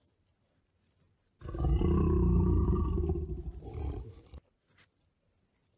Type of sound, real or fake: real